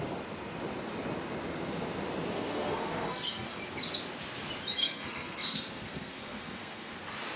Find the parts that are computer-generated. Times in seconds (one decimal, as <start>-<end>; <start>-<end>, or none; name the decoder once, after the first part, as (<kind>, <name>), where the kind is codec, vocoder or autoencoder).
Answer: 2.3-3.6 (codec, SNAC); 4.8-6.9